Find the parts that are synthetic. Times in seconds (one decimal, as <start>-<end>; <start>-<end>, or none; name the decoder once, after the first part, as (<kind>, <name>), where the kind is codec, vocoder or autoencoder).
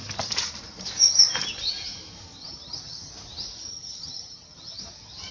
2.4-3.1 (vocoder, HiFi-GAN); 3.7-4.8